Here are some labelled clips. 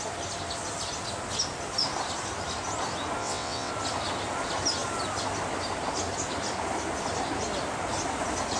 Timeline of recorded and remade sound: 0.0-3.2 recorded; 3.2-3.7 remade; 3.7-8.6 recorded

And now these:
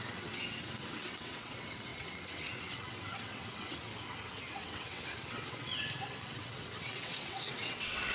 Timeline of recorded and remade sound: 0.0-3.9 remade; 3.9-4.5 recorded; 4.5-8.1 remade

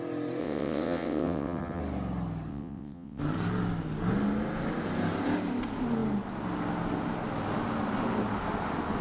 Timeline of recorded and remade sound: 0.0-0.4 recorded; 0.4-1.8 remade; 1.8-2.5 recorded; 2.5-3.2 remade; 3.2-9.0 recorded